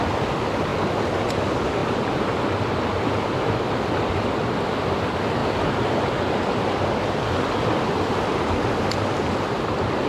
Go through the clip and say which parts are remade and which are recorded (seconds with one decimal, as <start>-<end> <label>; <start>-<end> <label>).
0.0-10.1 recorded